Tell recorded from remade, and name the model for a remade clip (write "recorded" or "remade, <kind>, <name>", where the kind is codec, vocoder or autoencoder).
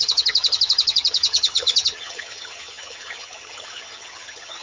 remade, vocoder, HiFi-GAN